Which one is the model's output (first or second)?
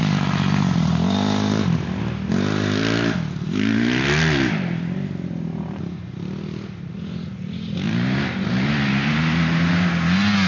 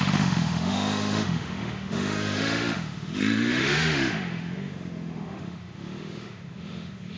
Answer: second